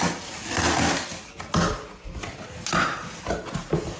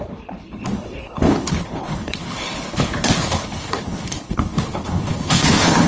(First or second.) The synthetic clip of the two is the second